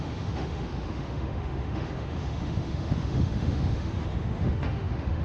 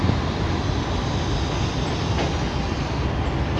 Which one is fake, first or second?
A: first